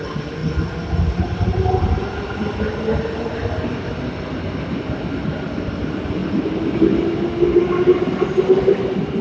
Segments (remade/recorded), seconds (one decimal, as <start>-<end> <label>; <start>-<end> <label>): 0.0-9.2 recorded